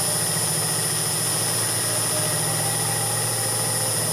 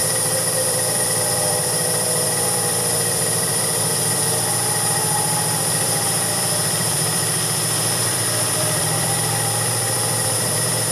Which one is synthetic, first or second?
second